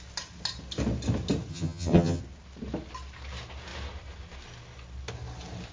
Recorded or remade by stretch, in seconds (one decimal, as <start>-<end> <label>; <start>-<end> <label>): 0.0-1.5 recorded; 1.5-2.2 remade; 2.2-5.7 recorded